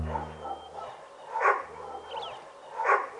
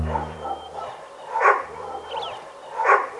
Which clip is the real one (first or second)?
first